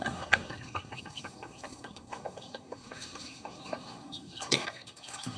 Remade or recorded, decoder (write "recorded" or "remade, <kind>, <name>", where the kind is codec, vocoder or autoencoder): remade, codec, SNAC